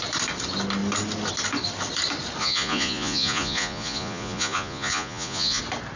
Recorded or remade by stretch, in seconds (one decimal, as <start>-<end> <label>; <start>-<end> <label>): 0.0-2.4 recorded; 2.4-5.6 remade; 5.6-6.0 recorded